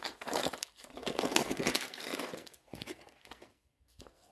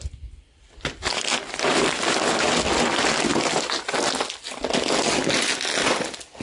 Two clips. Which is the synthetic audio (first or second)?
first